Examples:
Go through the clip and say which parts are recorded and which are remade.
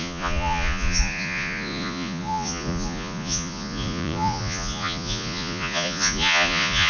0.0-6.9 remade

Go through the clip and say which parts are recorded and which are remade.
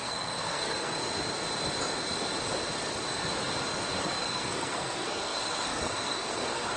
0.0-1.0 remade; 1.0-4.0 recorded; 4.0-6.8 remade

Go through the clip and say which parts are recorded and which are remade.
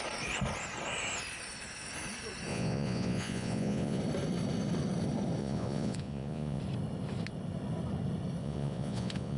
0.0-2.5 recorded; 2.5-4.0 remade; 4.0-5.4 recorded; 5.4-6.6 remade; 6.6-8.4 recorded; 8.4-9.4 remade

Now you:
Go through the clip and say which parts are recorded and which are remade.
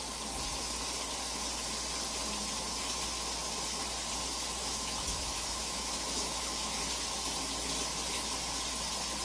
0.0-4.6 recorded; 4.6-6.8 remade; 6.8-9.2 recorded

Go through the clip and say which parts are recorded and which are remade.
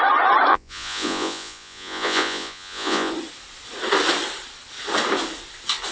0.0-0.5 recorded; 0.5-3.1 remade; 3.1-5.9 recorded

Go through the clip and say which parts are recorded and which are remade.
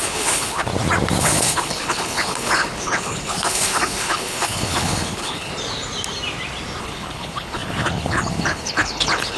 0.0-0.7 remade; 0.7-1.2 recorded; 1.2-5.5 remade; 5.5-6.8 recorded; 6.8-9.4 remade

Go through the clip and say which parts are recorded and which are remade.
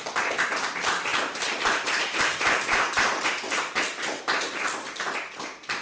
0.0-1.1 recorded; 1.1-4.6 remade; 4.6-5.8 recorded